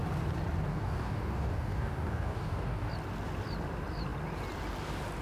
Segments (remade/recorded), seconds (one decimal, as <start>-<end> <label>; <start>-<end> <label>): 0.0-0.7 recorded; 0.7-2.9 remade; 2.9-5.2 recorded